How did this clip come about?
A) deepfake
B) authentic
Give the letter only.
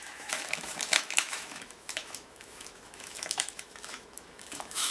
A